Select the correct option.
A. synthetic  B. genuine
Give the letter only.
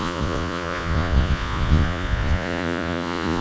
A